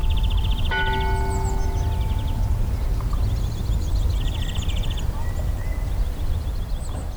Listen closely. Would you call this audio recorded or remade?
recorded